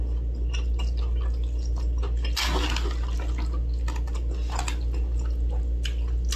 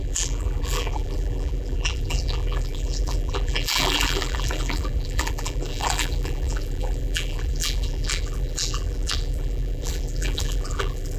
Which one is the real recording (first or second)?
first